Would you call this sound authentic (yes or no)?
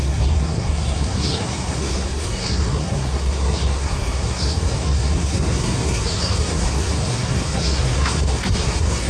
no